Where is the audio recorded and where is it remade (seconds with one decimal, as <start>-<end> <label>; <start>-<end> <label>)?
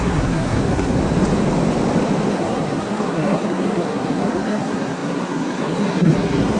0.0-1.0 remade; 1.0-2.3 recorded; 2.3-6.6 remade